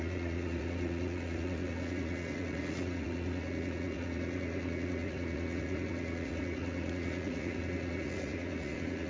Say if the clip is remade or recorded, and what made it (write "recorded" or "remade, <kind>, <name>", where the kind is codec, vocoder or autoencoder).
remade, vocoder, Vocos